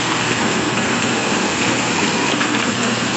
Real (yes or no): no